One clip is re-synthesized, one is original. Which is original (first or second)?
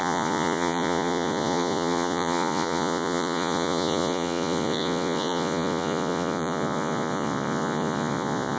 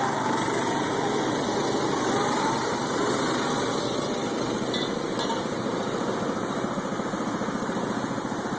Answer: second